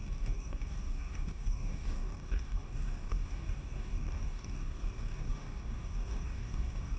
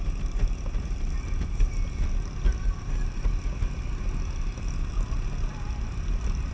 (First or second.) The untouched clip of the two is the second